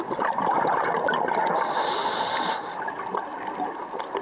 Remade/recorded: recorded